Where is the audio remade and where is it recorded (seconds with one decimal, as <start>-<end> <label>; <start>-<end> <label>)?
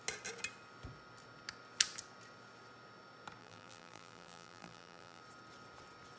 0.0-3.4 recorded; 3.4-5.2 remade; 5.2-6.2 recorded